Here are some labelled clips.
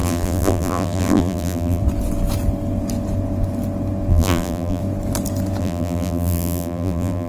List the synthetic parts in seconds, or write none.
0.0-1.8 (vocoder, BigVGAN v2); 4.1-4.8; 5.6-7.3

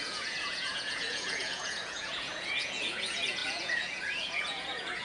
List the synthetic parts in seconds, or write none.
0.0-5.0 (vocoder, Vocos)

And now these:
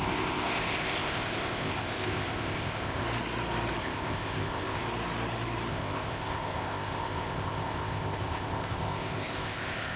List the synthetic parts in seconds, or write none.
0.0-3.0 (codec, ZipCodec); 3.8-4.8; 5.7-10.0

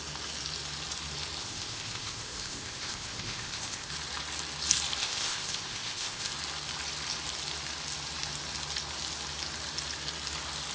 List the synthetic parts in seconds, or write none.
1.4-3.9 (codec, ZipCodec); 5.0-6.3